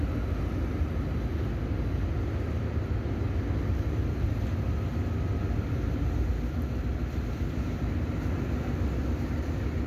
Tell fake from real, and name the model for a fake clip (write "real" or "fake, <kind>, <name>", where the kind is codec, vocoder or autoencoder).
real